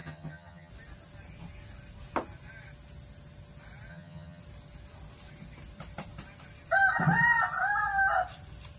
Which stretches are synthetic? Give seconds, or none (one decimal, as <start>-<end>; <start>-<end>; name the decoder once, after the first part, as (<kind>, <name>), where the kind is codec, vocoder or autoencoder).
0.0-0.7 (vocoder, HiFi-GAN); 3.9-4.4